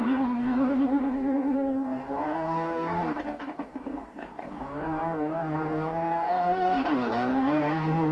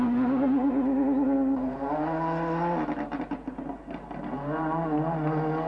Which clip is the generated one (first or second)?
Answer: first